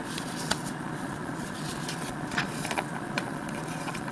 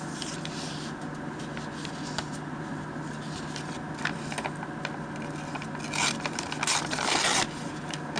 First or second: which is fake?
first